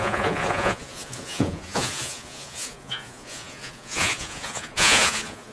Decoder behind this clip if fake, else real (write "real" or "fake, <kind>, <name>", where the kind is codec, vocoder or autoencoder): fake, vocoder, Vocos